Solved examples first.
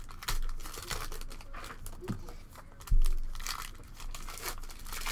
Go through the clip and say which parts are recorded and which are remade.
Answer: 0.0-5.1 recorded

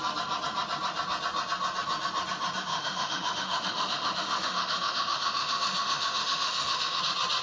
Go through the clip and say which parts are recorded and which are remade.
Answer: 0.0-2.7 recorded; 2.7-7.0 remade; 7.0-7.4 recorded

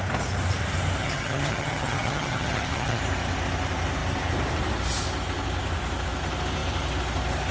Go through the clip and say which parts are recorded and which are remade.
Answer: 0.0-1.0 recorded; 1.0-3.0 remade; 3.0-7.5 recorded